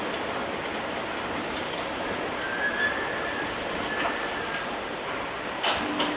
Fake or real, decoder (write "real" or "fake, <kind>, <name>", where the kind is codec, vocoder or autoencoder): real